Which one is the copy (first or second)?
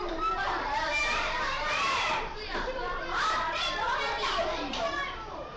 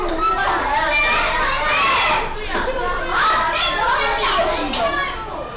first